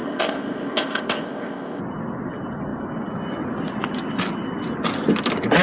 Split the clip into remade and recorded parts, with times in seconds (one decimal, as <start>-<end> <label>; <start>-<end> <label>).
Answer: 0.0-1.8 remade; 1.8-5.6 recorded

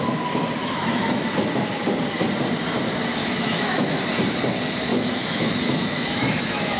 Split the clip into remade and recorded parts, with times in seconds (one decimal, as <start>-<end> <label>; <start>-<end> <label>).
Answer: 0.0-0.6 recorded; 0.6-1.3 remade; 1.3-3.2 recorded; 3.2-4.0 remade; 4.0-4.9 recorded; 4.9-6.8 remade

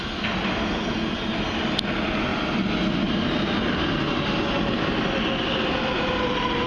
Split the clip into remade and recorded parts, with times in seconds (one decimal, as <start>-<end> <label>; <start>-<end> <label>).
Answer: 0.0-6.7 recorded

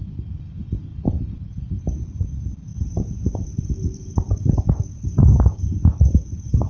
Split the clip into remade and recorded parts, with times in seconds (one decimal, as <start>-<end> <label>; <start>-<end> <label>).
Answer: 0.0-0.9 recorded; 0.9-2.2 remade; 2.2-2.7 recorded; 2.7-4.6 remade; 4.6-6.7 recorded

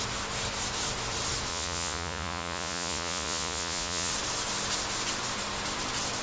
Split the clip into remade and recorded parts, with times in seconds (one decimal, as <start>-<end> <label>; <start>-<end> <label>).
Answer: 0.0-1.5 recorded; 1.5-4.1 remade; 4.1-6.2 recorded

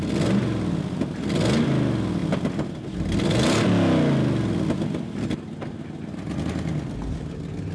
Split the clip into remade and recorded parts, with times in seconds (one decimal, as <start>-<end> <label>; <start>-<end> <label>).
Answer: 0.0-7.7 recorded

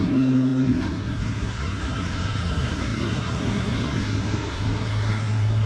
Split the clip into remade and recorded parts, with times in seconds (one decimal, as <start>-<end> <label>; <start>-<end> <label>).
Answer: 0.0-5.7 remade